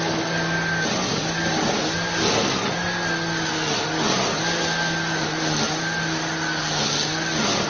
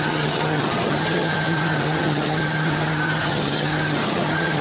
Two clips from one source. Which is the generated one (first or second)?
second